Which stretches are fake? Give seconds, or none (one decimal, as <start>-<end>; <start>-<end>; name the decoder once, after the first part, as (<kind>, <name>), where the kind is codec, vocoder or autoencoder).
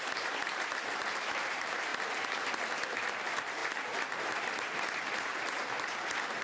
0.0-1.9 (vocoder, BigVGAN v2); 3.1-6.4